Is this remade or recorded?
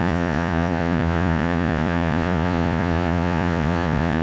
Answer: remade